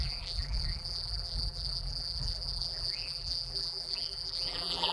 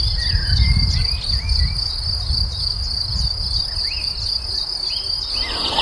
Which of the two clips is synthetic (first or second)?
first